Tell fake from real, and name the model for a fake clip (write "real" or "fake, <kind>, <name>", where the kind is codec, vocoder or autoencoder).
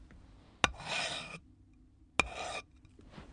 real